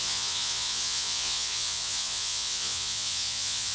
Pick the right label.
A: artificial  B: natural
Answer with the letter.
A